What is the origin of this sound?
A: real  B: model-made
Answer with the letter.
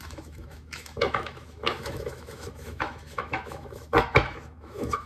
B